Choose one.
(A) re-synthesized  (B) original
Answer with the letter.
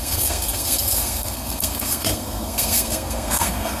A